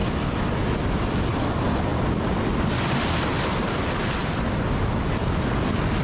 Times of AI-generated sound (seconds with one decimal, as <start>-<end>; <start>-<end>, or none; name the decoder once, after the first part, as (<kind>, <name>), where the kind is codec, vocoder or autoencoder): none